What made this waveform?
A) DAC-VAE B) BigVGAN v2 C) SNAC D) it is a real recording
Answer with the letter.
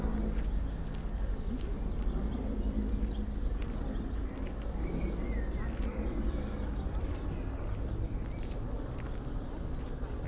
D